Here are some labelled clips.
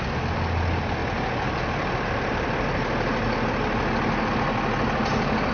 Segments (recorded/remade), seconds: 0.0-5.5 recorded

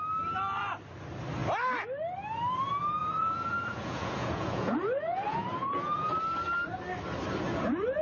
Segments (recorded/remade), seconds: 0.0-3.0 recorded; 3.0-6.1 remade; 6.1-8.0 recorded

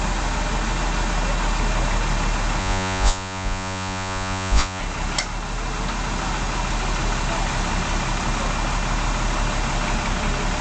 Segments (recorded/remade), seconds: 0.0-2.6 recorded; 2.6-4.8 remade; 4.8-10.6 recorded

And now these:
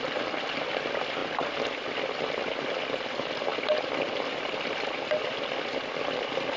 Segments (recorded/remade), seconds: 0.0-6.6 recorded

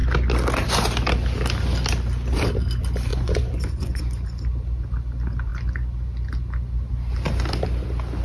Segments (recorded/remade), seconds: 0.0-3.1 recorded; 3.1-4.0 remade; 4.0-8.2 recorded

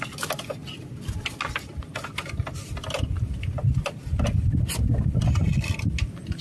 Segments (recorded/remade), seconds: 0.0-6.4 recorded

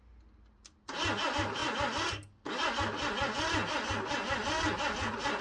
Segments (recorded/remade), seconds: 0.0-5.4 recorded